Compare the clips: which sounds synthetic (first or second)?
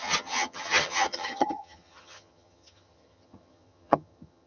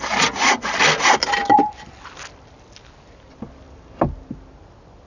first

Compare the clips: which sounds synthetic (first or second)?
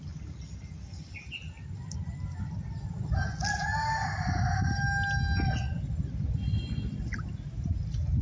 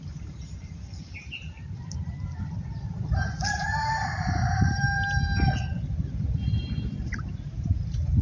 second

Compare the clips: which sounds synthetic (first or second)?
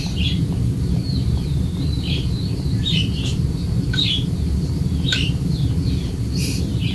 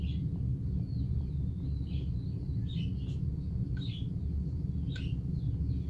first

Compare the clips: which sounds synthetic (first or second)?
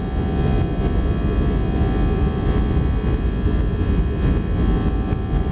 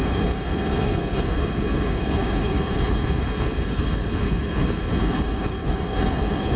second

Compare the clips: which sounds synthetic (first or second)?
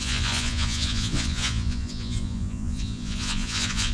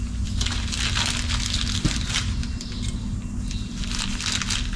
first